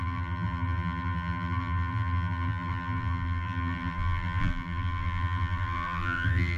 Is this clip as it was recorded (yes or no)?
no